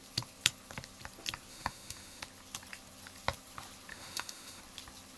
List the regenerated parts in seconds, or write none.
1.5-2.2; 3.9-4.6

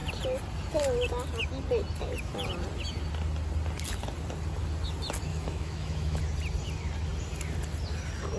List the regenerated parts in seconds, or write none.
5.3-6.2

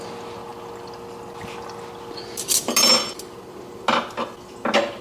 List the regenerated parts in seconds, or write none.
none

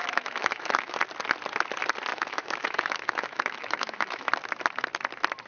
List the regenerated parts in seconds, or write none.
0.0-1.0; 2.1-4.3

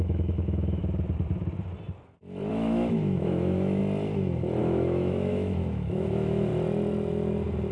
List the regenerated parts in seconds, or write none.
0.0-0.8; 2.5-3.8; 4.6-6.5

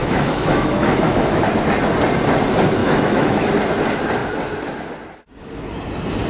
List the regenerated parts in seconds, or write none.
0.0-1.5; 2.8-3.5

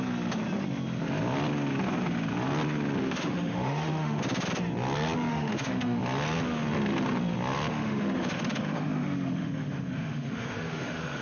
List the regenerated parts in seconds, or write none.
3.0-4.2; 5.3-6.0; 7.7-11.2

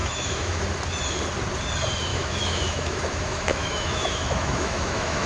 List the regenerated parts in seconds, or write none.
0.0-0.6; 2.1-5.3